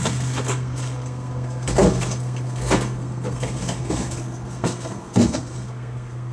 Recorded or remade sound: remade